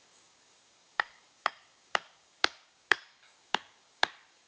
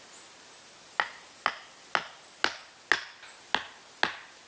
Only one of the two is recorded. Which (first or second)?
second